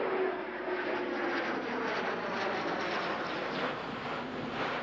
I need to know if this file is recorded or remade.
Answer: recorded